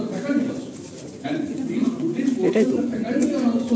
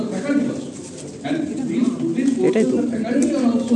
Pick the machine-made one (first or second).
first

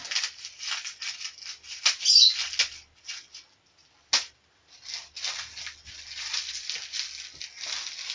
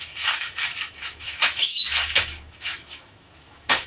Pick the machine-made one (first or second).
second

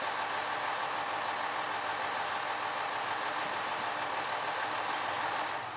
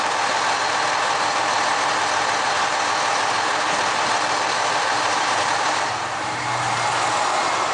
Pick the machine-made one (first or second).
second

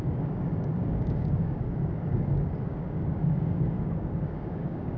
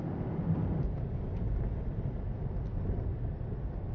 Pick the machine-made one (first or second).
first